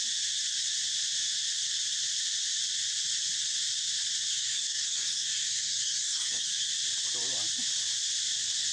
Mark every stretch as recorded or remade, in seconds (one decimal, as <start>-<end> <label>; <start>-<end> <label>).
0.0-4.3 recorded; 4.3-6.7 remade; 6.7-8.7 recorded